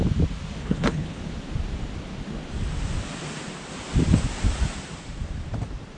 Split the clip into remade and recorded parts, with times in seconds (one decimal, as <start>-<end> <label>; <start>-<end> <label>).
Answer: 0.0-0.6 recorded; 0.6-1.2 remade; 1.2-6.0 recorded

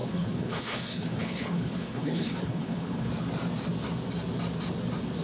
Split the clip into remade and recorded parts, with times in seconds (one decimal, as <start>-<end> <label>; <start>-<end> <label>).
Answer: 0.0-3.1 remade; 3.1-5.2 recorded

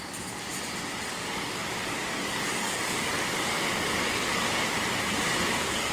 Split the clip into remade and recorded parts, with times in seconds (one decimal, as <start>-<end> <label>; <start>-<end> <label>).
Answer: 0.0-1.1 recorded; 1.1-4.6 remade; 4.6-5.1 recorded; 5.1-5.9 remade

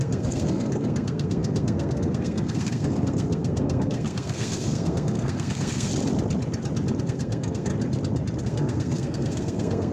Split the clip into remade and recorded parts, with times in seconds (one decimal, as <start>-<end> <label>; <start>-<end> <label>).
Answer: 0.0-5.9 remade; 5.9-7.0 recorded; 7.0-7.7 remade; 7.7-8.4 recorded; 8.4-9.9 remade

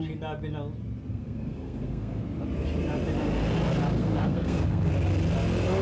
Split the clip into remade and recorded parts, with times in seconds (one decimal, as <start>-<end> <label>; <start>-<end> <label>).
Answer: 0.0-1.1 recorded; 1.1-2.2 remade; 2.2-4.0 recorded; 4.0-4.9 remade; 4.9-5.8 recorded

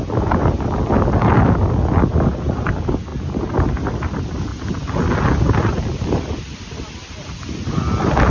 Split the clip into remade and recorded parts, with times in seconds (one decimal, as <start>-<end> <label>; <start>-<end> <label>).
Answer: 0.0-8.3 recorded

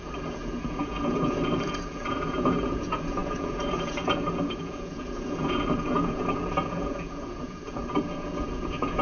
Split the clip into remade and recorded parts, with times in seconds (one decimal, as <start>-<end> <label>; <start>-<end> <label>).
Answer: 0.0-9.0 remade

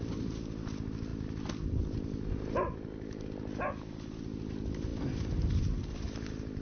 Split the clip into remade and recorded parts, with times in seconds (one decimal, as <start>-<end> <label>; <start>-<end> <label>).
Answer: 0.0-6.6 recorded